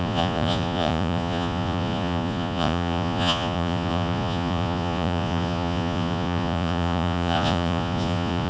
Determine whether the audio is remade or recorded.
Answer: remade